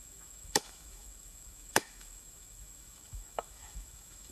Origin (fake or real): fake